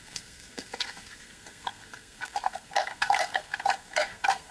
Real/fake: fake